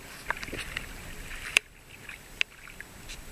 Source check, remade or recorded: recorded